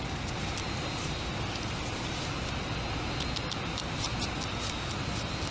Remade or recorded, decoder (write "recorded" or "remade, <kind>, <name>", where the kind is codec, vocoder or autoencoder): recorded